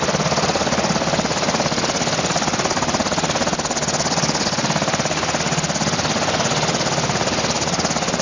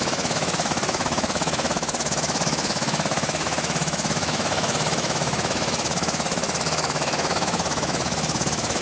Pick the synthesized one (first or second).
second